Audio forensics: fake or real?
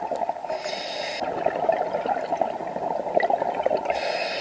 real